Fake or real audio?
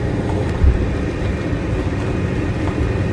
real